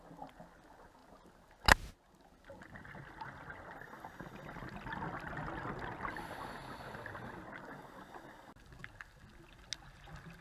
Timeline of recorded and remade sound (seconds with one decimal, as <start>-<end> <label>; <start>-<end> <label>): 0.0-10.4 recorded

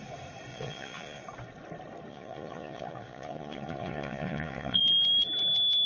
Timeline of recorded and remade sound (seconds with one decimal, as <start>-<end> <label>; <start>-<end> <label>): 0.0-0.5 recorded; 0.5-1.2 remade; 1.2-2.1 recorded; 2.1-4.8 remade; 4.8-5.9 recorded

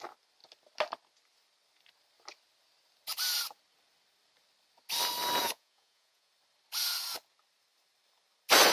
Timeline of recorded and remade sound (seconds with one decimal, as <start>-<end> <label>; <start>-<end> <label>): 0.0-5.4 recorded; 5.4-6.3 remade; 6.3-8.7 recorded

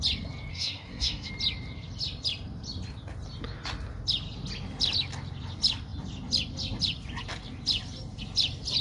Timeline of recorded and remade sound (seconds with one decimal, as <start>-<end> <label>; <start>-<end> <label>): 0.0-0.5 recorded; 0.5-1.3 remade; 1.3-8.8 recorded